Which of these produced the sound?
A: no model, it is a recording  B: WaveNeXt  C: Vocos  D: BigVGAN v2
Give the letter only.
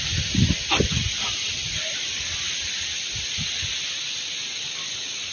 A